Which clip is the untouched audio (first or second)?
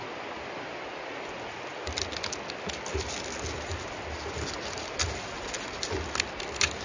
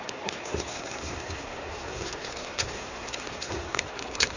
first